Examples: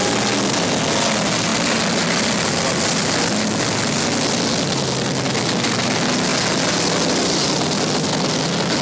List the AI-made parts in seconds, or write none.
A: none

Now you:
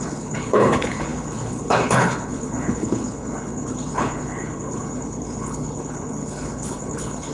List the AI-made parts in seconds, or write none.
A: 0.0-7.3 (codec, HILCodec)

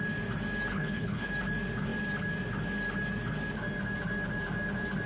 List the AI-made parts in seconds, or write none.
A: 0.7-1.3 (codec, HILCodec)

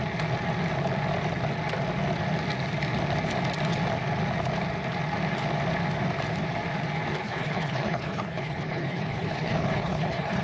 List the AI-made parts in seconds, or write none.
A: 7.2-10.4 (codec, HILCodec)

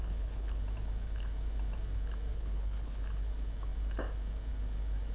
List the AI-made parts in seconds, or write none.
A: 0.0-0.6 (codec, HILCodec); 2.3-3.0

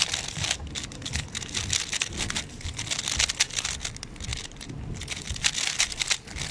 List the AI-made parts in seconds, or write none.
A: none

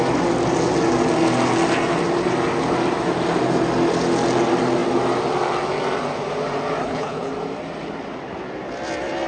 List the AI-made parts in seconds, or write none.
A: 6.8-7.3 (codec, HILCodec)

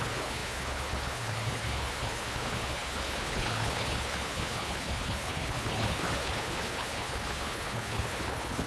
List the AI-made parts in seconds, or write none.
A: 0.0-8.7 (codec, HILCodec)